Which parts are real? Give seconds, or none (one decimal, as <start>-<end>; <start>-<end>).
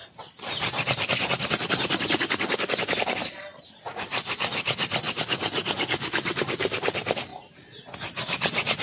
0.0-7.3; 8.2-8.8